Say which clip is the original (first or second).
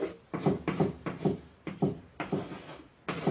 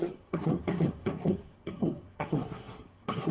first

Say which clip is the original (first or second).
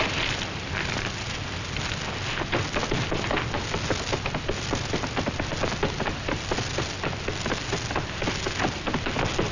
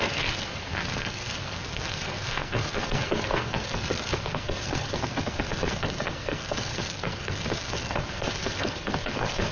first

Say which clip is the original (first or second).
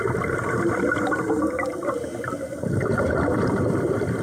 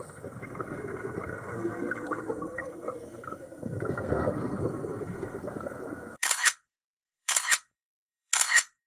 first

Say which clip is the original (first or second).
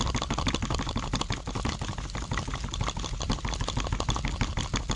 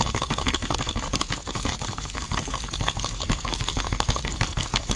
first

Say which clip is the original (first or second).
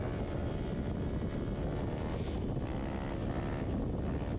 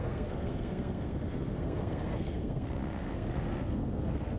first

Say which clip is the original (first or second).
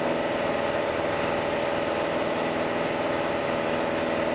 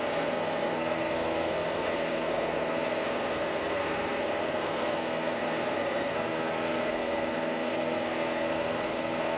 first